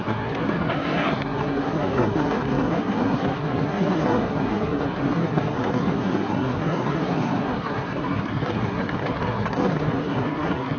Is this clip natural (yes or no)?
no